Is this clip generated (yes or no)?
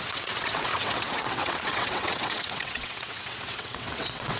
yes